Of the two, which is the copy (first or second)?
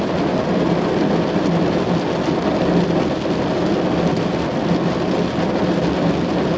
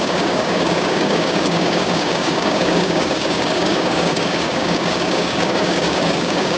second